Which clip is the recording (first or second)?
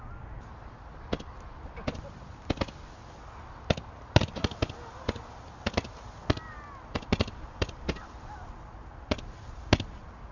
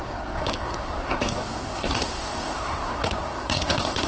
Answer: first